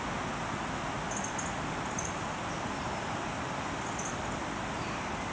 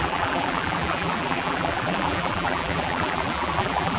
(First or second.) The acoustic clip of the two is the first